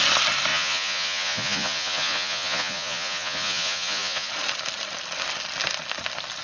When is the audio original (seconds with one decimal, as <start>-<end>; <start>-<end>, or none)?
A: 0.0-0.5; 4.3-6.4